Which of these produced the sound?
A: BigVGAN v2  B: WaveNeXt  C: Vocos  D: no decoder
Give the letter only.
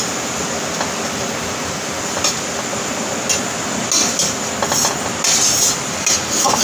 D